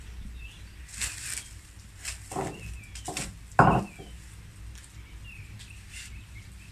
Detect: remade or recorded recorded